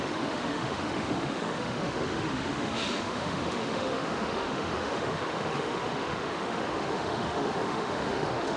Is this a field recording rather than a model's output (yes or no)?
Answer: no